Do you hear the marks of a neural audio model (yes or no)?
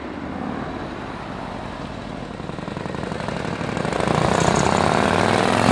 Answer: no